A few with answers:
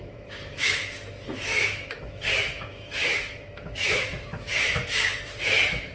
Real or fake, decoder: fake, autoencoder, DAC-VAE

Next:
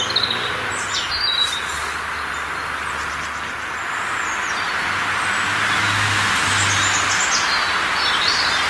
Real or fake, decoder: real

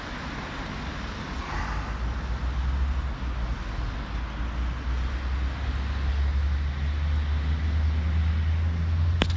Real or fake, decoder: real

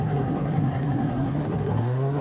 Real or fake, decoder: fake, codec, SNAC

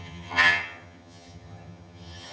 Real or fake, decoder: fake, vocoder, HiFi-GAN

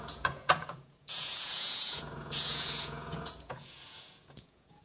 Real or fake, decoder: fake, vocoder, Vocos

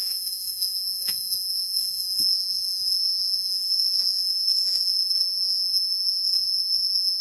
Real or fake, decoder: fake, vocoder, Vocos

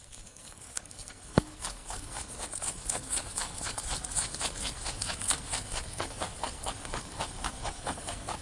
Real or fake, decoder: fake, codec, SNAC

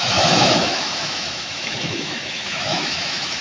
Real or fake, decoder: fake, autoencoder, DAC-VAE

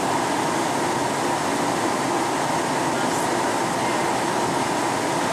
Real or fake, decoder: real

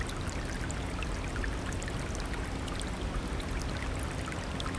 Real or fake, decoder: real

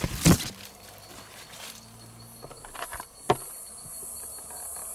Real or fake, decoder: real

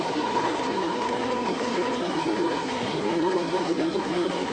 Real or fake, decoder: fake, codec, SNAC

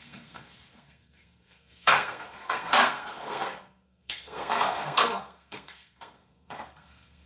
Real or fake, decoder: fake, codec, SNAC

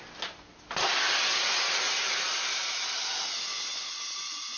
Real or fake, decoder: real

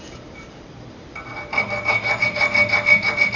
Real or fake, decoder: real